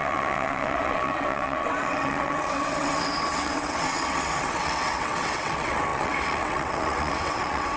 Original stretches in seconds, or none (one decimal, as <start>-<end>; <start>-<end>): none